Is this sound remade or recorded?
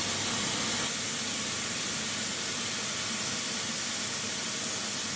recorded